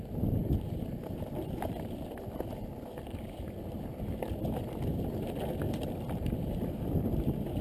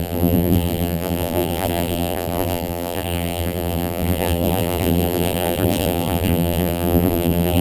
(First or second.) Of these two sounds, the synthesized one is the second